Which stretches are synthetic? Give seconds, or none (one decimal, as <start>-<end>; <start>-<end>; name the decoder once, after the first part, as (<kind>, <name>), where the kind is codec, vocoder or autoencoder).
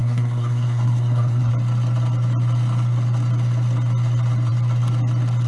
0.0-1.5 (codec, SNAC)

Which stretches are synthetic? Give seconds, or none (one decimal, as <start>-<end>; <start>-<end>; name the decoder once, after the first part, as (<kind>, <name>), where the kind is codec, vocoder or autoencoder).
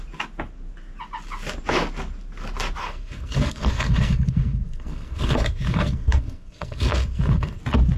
2.8-7.6 (codec, SNAC)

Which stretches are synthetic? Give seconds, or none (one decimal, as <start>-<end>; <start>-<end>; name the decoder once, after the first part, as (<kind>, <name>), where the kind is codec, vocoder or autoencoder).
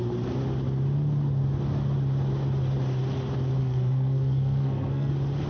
3.6-5.1 (codec, SNAC)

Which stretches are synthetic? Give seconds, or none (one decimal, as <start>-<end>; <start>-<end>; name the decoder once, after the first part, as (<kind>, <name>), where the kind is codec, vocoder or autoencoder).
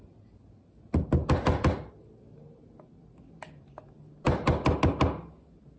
none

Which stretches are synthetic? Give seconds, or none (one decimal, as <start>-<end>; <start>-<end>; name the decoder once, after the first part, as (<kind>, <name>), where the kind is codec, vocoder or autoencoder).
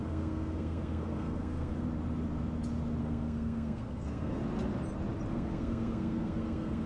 0.0-1.9 (codec, SNAC); 3.0-4.4; 5.3-6.9